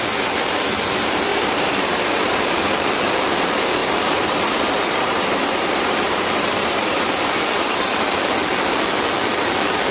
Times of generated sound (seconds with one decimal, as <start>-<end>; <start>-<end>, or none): 1.3-2.5; 3.8-7.1